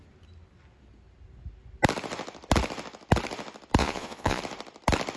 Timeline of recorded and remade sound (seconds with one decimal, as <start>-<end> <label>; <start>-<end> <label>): 0.0-3.8 recorded; 3.8-4.4 remade; 4.4-5.2 recorded